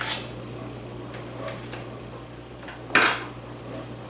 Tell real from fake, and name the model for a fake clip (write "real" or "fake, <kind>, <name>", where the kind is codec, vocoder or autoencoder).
real